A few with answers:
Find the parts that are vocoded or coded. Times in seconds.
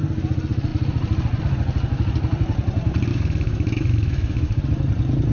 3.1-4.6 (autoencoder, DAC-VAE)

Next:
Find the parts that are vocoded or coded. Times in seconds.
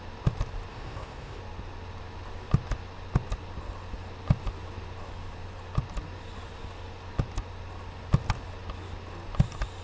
0.7-1.4 (codec, ZipCodec)